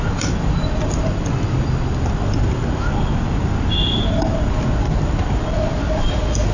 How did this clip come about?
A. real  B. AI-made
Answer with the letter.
A